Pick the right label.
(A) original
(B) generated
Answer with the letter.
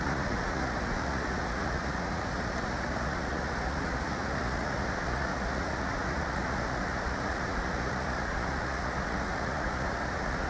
B